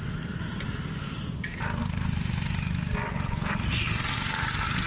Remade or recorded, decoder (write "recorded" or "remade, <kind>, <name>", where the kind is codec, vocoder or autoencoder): recorded